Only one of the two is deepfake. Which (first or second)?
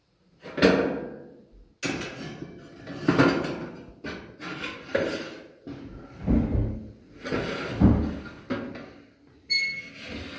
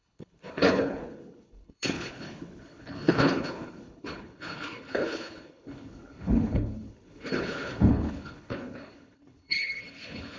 second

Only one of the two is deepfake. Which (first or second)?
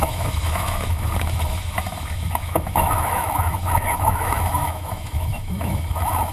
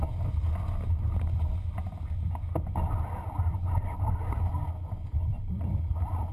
first